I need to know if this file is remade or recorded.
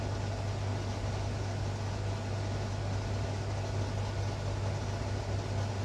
recorded